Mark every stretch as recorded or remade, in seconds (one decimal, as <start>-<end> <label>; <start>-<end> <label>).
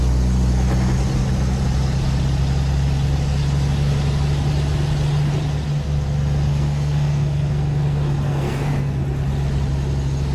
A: 0.0-6.5 recorded; 6.5-9.0 remade; 9.0-10.3 recorded